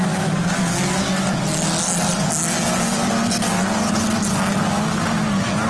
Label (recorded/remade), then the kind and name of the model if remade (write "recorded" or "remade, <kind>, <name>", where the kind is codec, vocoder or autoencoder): recorded